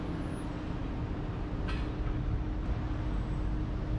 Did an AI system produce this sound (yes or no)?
no